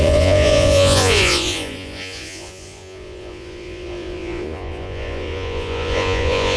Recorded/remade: remade